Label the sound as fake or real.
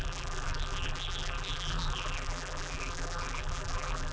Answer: fake